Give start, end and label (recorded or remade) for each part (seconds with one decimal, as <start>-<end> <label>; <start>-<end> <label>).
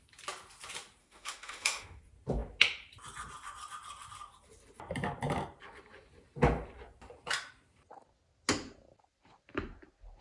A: 0.0-1.0 recorded; 1.0-2.0 remade; 2.0-10.2 recorded